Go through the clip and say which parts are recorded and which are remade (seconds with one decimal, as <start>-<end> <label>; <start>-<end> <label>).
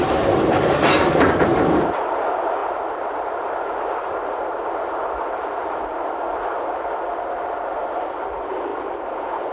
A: 0.0-5.9 remade; 5.9-7.0 recorded; 7.0-9.5 remade